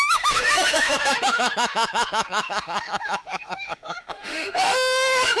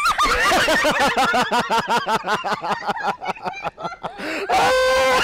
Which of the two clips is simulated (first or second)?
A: first